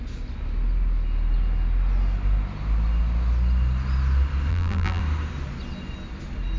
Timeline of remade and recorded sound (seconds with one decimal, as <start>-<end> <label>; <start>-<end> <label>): 0.0-4.5 recorded; 4.5-5.0 remade; 5.0-6.6 recorded